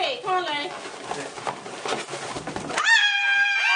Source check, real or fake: real